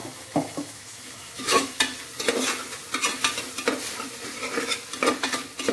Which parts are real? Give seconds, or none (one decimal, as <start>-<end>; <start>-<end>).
1.8-5.7